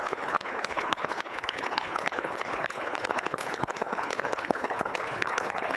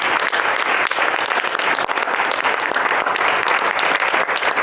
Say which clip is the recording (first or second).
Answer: second